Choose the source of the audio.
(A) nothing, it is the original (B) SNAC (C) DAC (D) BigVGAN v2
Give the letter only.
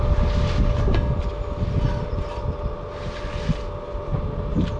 A